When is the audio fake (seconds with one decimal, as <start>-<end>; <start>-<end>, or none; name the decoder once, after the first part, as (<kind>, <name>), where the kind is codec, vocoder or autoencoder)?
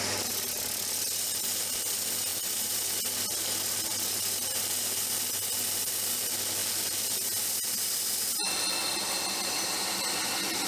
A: 6.6-7.3 (vocoder, BigVGAN v2)